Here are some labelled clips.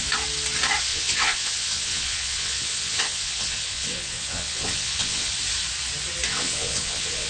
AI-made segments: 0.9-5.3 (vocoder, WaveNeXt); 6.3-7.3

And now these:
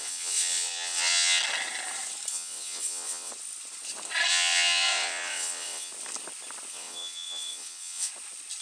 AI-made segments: 0.0-1.4 (vocoder, WaveNeXt); 2.3-3.3; 4.3-5.9; 6.7-8.1

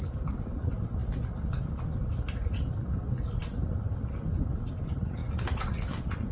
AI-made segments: none

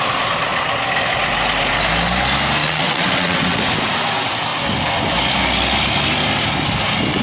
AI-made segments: 2.6-3.6 (vocoder, WaveNeXt)

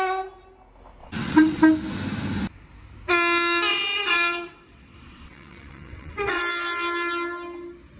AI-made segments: 1.0-1.6 (vocoder, WaveNeXt); 3.7-6.4

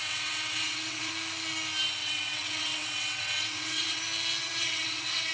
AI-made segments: 0.0-1.1 (vocoder, WaveNeXt); 2.0-4.0; 4.4-5.3